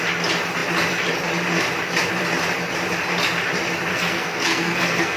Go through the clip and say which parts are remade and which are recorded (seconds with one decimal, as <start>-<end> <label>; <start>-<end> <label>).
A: 0.0-3.9 recorded; 3.9-5.2 remade